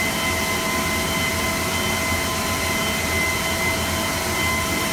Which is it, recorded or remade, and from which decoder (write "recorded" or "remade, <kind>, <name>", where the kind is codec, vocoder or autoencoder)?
recorded